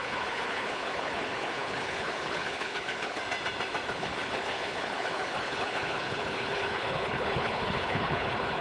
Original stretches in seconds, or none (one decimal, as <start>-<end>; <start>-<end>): 3.2-3.9